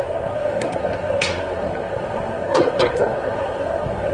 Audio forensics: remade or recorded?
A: remade